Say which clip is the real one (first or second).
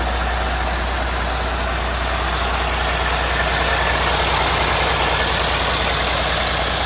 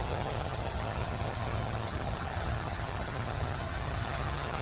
first